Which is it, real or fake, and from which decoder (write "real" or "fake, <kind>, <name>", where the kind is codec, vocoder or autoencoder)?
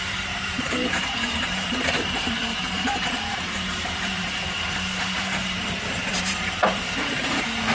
fake, vocoder, BigVGAN v2